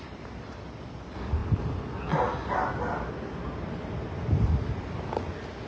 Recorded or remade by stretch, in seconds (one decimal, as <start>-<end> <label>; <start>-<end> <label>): 0.0-5.7 recorded